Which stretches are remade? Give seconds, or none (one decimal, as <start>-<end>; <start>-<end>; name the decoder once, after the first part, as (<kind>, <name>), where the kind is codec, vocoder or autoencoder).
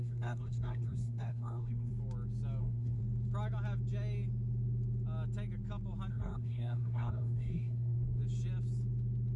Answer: 0.0-1.9 (codec, SNAC); 2.6-3.0; 6.1-8.2